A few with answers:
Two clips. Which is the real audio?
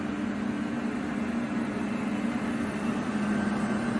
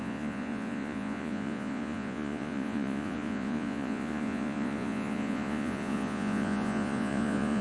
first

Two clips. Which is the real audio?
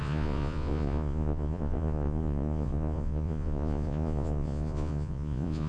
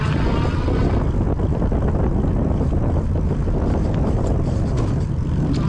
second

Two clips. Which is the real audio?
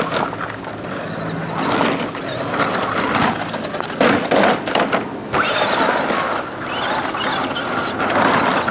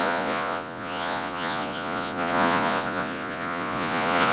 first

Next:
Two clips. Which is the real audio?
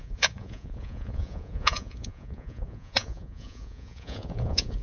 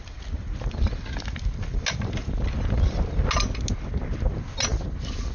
second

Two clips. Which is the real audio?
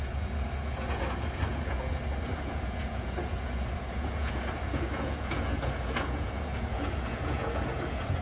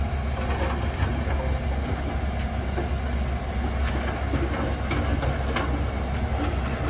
second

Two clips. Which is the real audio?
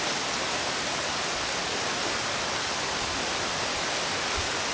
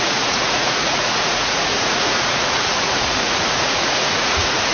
first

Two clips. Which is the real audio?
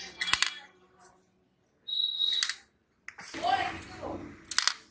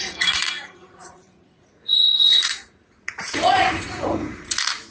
first